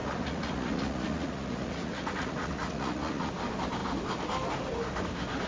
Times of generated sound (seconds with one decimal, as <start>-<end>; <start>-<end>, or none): 0.0-3.3

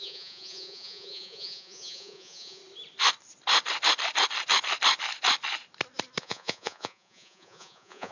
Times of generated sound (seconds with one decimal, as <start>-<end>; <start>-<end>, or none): 0.0-2.6; 6.2-8.1

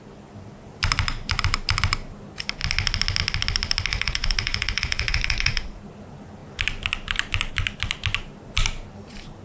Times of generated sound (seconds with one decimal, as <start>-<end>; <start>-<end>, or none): 3.9-5.8

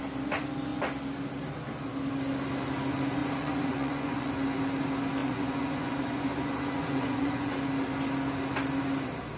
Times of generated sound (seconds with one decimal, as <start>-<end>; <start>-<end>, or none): 3.2-4.3; 5.2-7.6

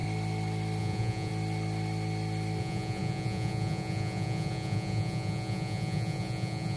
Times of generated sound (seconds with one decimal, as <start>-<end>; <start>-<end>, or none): 0.8-1.3; 2.6-6.8